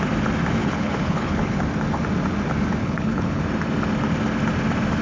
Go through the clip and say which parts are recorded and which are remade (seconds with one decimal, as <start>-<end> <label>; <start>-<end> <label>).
0.0-0.6 recorded; 0.6-1.5 remade; 1.5-2.8 recorded; 2.8-3.4 remade; 3.4-5.0 recorded